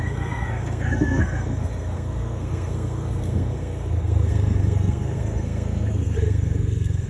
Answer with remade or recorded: remade